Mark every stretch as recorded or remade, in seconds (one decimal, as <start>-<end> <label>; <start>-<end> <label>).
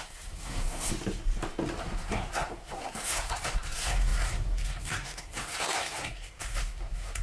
0.0-0.9 remade; 0.9-1.8 recorded; 1.8-7.2 remade